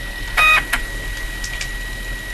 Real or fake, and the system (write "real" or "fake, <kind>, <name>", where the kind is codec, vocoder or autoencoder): real